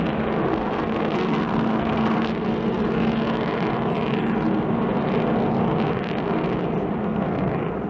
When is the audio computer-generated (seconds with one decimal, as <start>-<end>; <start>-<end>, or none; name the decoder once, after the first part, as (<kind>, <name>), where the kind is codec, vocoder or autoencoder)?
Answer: 0.5-2.3 (codec, SNAC); 7.0-7.5